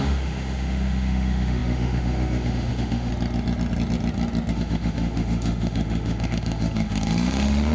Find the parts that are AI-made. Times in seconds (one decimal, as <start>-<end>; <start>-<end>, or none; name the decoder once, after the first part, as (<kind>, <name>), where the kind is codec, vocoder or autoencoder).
0.0-3.1 (autoencoder, DAC-VAE); 4.5-7.7